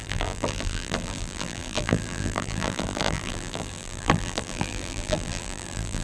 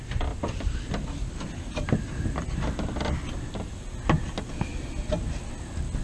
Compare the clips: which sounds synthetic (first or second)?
first